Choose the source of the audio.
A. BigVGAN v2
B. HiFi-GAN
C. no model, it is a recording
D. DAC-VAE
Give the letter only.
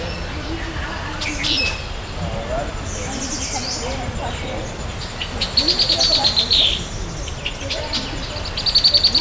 C